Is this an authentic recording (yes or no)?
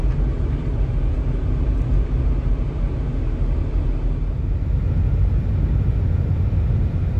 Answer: yes